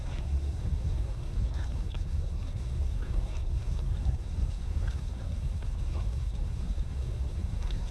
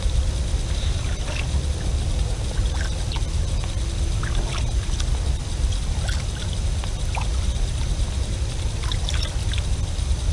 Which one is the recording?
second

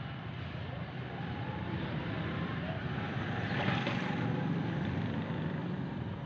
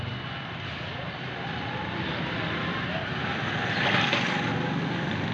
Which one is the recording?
second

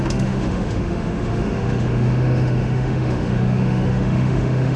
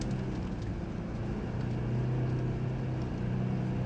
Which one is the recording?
second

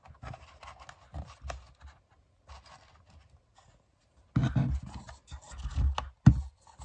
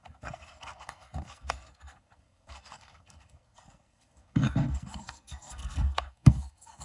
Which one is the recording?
first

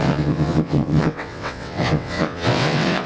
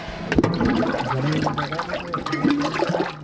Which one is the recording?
second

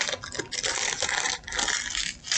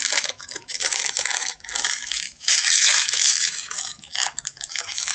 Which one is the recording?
first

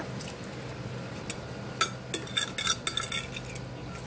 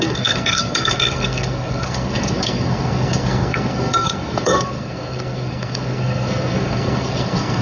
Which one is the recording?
first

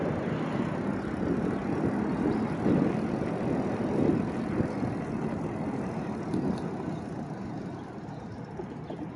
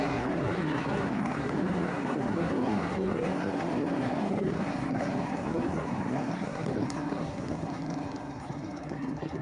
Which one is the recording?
first